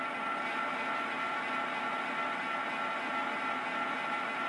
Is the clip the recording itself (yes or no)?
yes